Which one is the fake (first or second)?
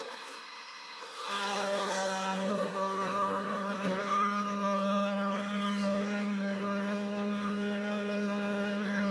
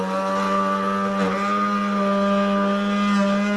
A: first